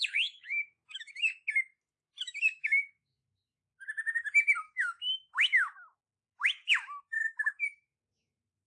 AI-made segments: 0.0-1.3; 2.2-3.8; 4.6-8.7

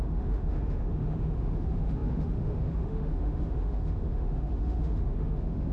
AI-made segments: 0.0-5.7

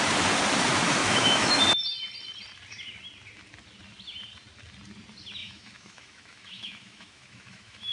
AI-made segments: 1.0-1.6; 5.4-7.9